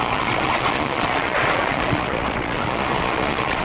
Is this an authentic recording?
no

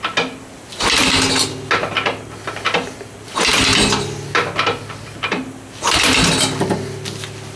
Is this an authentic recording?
yes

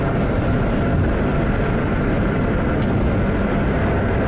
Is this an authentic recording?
yes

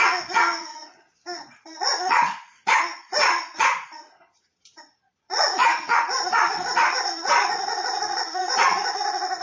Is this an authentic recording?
no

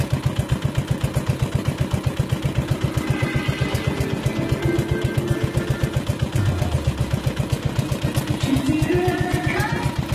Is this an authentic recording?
yes